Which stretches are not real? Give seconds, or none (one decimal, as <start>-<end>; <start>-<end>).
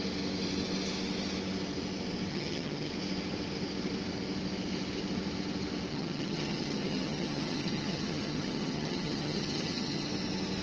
2.3-2.9; 5.9-10.1